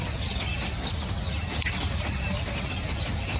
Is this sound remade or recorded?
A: recorded